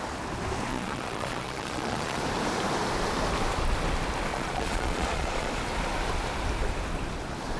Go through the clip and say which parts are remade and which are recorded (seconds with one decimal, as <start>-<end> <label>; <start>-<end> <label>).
0.0-0.7 recorded; 0.7-2.2 remade; 2.2-4.3 recorded; 4.3-5.5 remade; 5.5-7.6 recorded